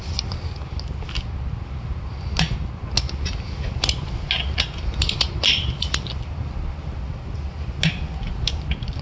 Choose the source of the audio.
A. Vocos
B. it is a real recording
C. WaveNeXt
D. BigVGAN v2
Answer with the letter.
B